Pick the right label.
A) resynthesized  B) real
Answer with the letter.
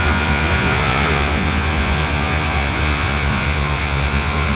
A